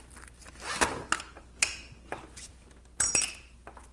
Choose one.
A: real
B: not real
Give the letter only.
A